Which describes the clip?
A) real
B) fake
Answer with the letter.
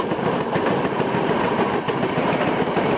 B